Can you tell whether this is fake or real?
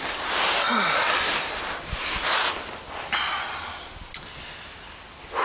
real